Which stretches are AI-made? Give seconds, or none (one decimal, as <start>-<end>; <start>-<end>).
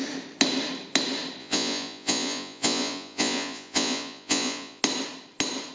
1.4-4.8